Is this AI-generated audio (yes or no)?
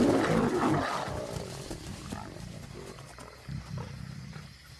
no